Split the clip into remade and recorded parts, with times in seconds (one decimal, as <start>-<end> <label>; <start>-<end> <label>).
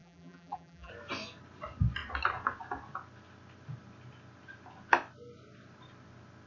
0.0-0.9 remade; 0.9-6.5 recorded